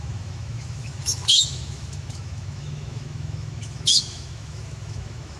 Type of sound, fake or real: fake